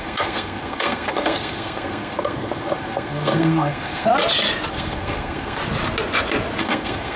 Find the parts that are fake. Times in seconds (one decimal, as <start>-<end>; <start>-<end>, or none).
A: 0.0-4.1; 4.7-5.6; 6.6-7.2